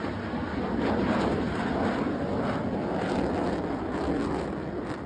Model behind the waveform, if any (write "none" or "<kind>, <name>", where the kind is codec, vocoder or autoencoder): none